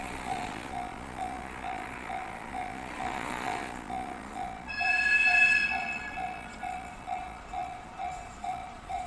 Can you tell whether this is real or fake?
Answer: fake